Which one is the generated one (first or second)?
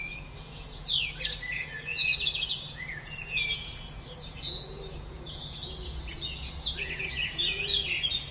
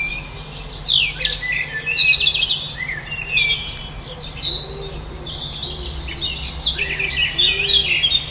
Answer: first